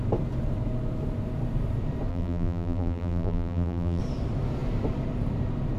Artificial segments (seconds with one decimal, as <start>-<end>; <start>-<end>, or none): 2.1-4.0